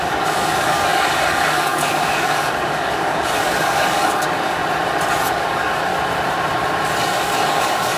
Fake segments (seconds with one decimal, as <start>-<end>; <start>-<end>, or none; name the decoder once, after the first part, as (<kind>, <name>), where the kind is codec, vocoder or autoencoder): 0.0-4.6 (codec, DAC); 5.3-5.9; 7.0-8.0